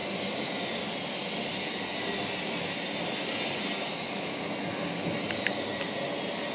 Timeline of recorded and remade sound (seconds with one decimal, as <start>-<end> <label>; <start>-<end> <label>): 0.0-6.5 recorded